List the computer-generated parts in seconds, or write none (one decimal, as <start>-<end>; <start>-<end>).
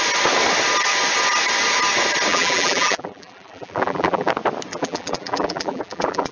2.3-4.3; 4.7-6.3